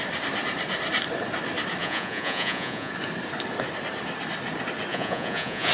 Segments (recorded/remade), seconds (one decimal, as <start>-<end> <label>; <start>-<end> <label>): 0.0-1.8 recorded; 1.8-2.9 remade; 2.9-4.9 recorded; 4.9-5.7 remade